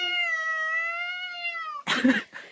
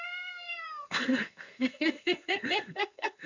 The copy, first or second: second